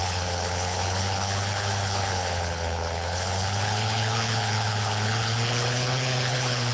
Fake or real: fake